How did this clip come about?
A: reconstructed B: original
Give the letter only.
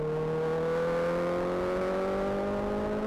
B